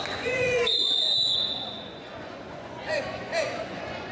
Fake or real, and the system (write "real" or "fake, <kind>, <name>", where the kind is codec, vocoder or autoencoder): fake, vocoder, Vocos